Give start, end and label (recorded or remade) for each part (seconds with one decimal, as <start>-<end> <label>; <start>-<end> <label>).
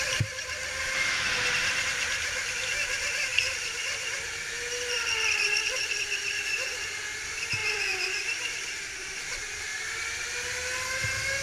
0.0-3.3 recorded; 3.3-6.0 remade; 6.0-7.6 recorded; 7.6-10.2 remade; 10.2-11.4 recorded